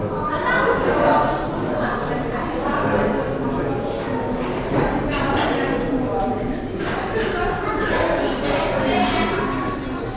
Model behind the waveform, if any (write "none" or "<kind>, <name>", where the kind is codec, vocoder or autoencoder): none